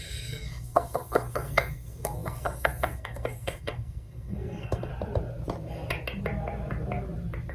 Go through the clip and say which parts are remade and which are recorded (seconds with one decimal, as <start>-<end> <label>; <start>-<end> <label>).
0.0-4.9 remade; 4.9-7.5 recorded

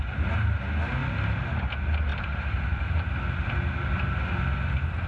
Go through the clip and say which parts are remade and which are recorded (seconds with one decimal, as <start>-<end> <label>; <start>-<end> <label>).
0.0-2.1 recorded; 2.1-3.0 remade; 3.0-5.1 recorded